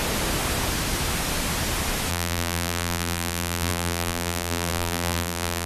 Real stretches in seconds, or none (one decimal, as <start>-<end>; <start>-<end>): 0.0-2.1